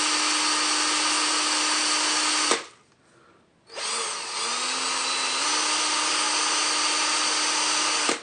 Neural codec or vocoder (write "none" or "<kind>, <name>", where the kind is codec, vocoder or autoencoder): none